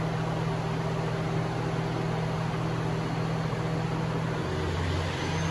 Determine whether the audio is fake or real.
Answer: real